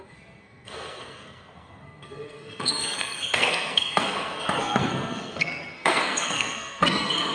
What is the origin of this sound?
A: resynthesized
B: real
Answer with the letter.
A